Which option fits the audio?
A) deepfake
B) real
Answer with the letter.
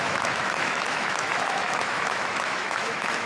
A